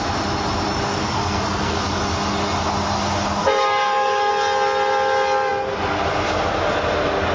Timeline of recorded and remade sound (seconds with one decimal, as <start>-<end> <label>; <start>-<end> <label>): 0.0-1.0 recorded; 1.0-1.8 remade; 1.8-3.4 recorded; 3.4-4.3 remade; 4.3-7.3 recorded